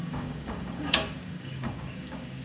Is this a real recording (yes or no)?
no